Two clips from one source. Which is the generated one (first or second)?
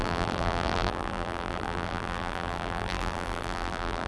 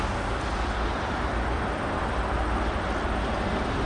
first